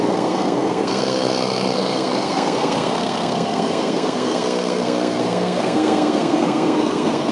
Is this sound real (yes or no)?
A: no